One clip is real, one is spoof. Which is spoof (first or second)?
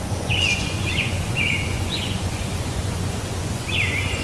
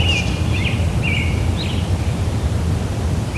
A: first